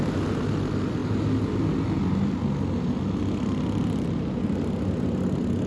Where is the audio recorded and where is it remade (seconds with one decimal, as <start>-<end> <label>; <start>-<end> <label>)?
0.0-5.7 recorded